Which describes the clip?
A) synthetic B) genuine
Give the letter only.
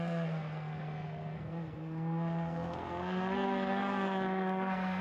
A